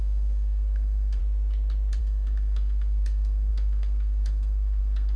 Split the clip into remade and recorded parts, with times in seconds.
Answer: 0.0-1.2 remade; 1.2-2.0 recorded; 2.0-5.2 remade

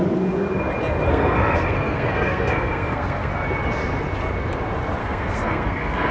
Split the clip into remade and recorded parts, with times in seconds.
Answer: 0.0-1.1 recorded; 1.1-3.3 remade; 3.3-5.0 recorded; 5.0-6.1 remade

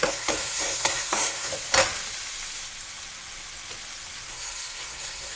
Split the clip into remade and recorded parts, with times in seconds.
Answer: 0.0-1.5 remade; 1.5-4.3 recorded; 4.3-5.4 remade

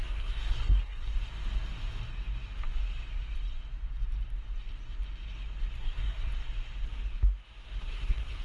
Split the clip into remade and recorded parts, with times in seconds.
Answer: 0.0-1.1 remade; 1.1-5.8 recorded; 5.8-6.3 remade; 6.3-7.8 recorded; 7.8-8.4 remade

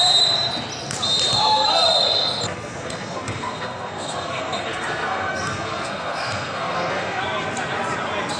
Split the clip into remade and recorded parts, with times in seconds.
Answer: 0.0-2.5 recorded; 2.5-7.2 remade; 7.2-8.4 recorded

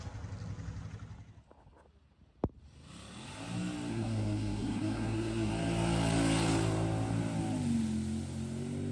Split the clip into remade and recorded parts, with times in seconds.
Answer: 0.0-3.9 recorded; 3.9-5.5 remade; 5.5-8.9 recorded